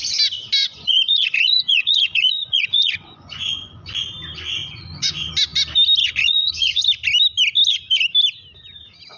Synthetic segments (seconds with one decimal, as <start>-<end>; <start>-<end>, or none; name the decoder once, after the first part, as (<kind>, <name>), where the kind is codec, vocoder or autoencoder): 0.6-3.9 (vocoder, Vocos); 4.6-5.3; 6.0-6.8